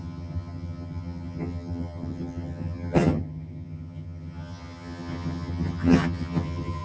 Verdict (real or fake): fake